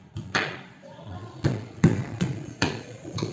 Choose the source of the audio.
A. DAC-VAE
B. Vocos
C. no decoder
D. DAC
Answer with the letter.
B